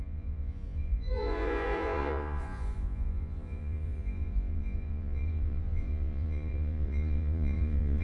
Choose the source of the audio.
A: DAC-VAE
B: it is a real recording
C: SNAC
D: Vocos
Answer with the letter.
D